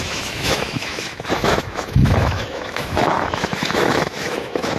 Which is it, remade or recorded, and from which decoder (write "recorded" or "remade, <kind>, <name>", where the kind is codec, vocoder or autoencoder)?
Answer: remade, autoencoder, DAC-VAE